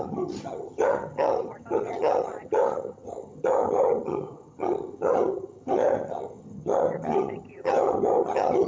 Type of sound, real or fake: fake